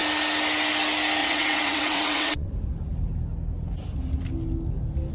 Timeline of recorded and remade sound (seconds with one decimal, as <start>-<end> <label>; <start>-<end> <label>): 0.0-1.2 recorded; 1.2-2.5 remade; 2.5-5.1 recorded